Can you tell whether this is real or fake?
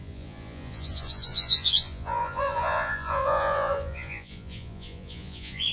fake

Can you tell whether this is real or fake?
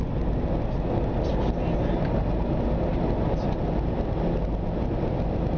real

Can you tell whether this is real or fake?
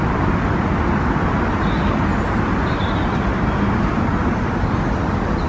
real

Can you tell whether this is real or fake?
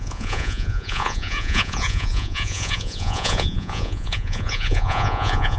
fake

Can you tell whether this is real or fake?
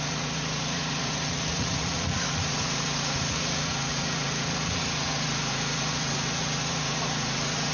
fake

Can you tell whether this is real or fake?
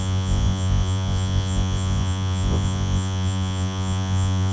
fake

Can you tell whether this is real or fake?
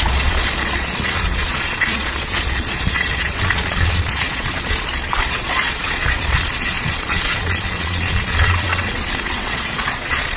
fake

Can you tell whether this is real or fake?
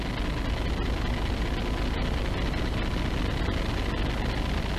real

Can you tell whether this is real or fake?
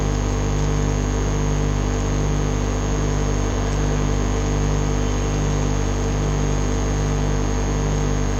real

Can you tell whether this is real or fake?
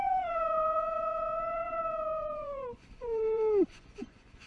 fake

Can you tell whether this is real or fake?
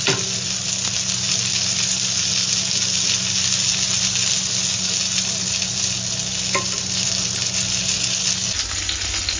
real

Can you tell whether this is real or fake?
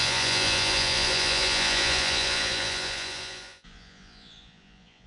fake